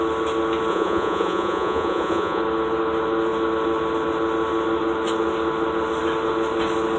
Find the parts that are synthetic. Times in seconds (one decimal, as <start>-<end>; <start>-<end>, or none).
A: 0.7-2.4